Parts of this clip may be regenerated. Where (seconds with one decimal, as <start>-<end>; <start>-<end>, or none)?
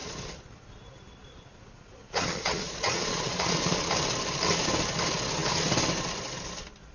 1.2-3.9